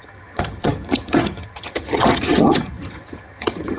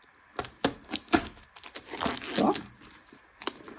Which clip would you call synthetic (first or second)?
first